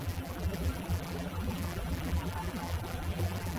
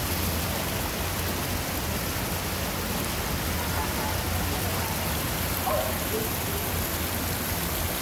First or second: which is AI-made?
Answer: first